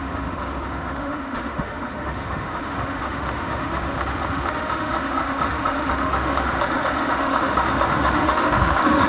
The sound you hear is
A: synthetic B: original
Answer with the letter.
A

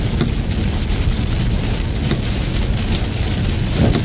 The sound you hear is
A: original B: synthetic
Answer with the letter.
A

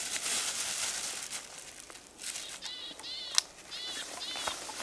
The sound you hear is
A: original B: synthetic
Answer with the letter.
A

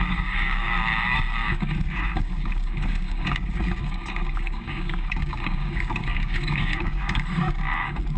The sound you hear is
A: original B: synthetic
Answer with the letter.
B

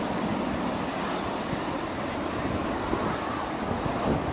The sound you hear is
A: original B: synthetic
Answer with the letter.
A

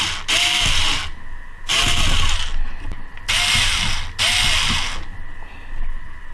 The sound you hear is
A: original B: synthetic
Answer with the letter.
A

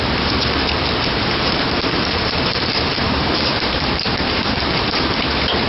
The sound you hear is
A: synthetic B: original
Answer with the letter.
A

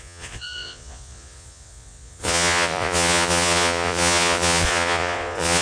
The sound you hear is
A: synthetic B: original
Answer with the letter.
A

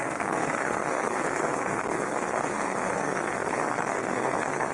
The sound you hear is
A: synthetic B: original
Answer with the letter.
A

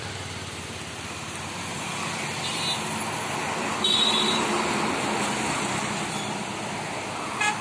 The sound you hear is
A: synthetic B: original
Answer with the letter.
B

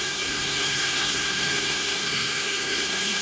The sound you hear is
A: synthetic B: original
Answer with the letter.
A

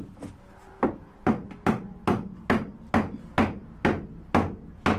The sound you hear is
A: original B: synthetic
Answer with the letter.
A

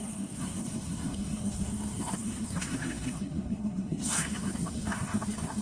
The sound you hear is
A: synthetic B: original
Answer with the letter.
A